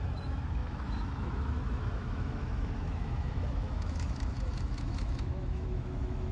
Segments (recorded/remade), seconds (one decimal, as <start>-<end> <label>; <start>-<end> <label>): 0.0-6.3 remade